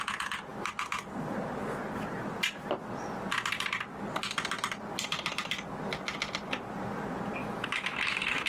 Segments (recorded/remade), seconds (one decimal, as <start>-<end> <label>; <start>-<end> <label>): 0.0-7.4 recorded; 7.4-8.5 remade